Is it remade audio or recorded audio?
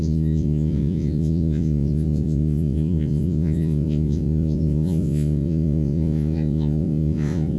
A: remade